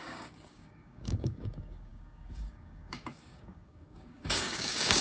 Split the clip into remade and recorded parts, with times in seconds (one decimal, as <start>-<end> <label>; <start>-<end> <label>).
0.0-5.0 remade